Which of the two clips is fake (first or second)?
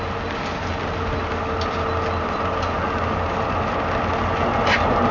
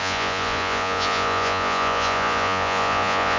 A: second